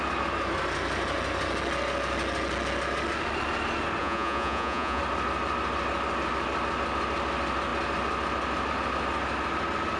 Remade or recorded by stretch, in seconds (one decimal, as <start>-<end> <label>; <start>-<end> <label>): 0.0-4.0 recorded; 4.0-5.0 remade; 5.0-10.0 recorded